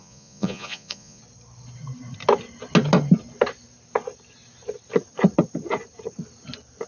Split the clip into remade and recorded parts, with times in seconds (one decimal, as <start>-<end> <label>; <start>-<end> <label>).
0.0-1.2 remade; 1.2-6.9 recorded